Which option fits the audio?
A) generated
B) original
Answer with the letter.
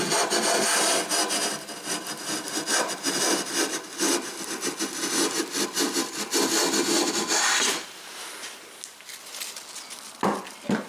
B